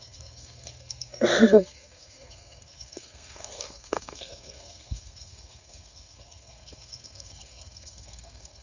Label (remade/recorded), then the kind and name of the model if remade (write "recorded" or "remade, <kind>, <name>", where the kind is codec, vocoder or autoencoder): remade, codec, SNAC